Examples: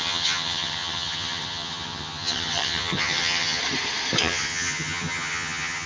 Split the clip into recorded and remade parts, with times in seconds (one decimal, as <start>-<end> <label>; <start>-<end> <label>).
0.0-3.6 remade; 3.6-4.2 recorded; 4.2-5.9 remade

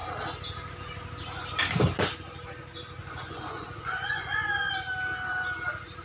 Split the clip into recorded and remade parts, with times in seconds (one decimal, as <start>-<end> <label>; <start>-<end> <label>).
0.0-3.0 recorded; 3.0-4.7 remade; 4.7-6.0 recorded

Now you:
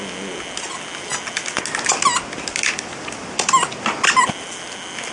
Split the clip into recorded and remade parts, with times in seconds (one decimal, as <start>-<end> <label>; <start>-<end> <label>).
0.0-5.1 recorded

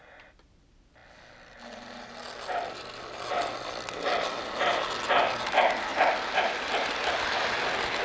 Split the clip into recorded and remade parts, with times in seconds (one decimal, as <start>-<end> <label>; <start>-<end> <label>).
0.0-8.0 recorded

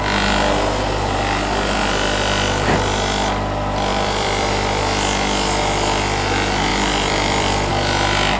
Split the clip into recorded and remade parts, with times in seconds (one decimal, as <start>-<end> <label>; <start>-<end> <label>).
0.0-3.9 recorded; 3.9-4.8 remade; 4.8-6.7 recorded; 6.7-7.7 remade; 7.7-8.4 recorded